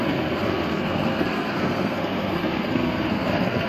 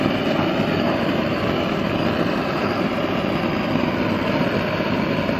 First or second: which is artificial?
first